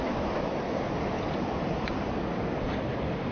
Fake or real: real